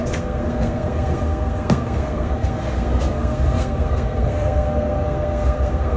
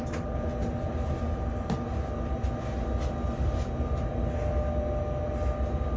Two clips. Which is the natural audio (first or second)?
second